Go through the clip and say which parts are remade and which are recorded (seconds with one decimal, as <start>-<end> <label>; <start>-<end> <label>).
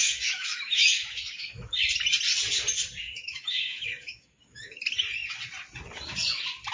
0.0-1.8 remade; 1.8-3.0 recorded; 3.0-4.8 remade; 4.8-6.7 recorded